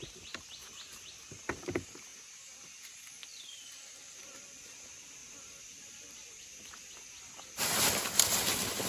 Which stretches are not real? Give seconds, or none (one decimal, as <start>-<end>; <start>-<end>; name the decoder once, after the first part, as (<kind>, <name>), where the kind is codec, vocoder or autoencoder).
3.2-4.7 (vocoder, BigVGAN v2); 5.2-8.0